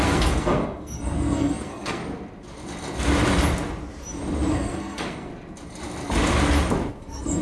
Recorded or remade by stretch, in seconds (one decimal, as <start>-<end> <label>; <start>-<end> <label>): 0.0-2.0 remade; 2.0-4.5 recorded; 4.5-5.3 remade; 5.3-6.9 recorded; 6.9-7.4 remade